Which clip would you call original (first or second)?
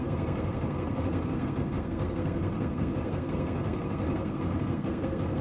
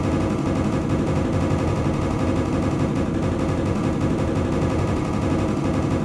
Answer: second